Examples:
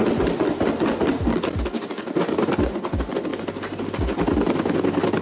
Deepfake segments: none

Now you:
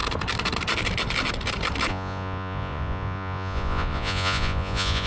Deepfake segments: 1.9-5.1 (vocoder, Vocos)

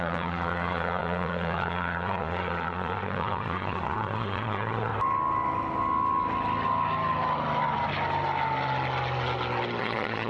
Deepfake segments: 0.0-4.9 (vocoder, Vocos); 9.8-10.3

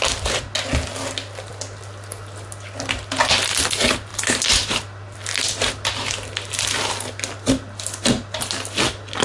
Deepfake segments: none

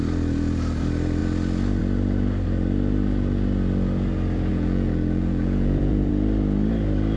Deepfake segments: 4.5-6.1 (vocoder, Vocos)